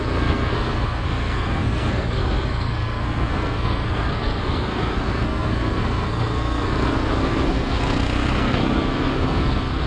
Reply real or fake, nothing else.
fake